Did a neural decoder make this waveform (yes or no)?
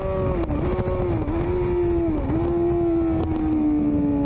no